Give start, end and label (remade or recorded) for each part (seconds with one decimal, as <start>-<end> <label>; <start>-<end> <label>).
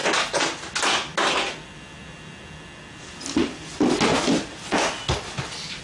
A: 0.0-5.8 recorded